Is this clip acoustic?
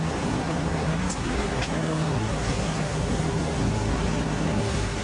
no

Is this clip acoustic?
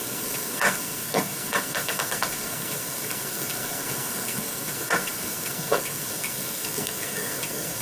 no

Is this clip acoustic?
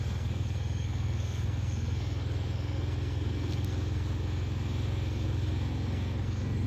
no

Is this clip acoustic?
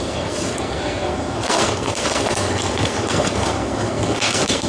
no